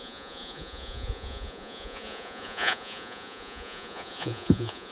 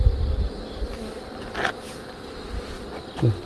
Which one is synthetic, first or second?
first